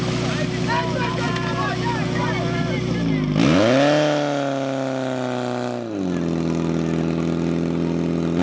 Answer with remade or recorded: recorded